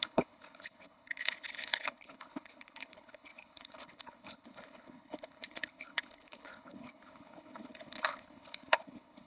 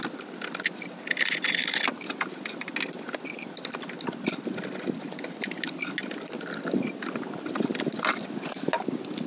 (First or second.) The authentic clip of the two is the second